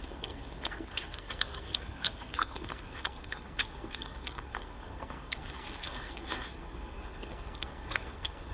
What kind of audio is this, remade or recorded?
remade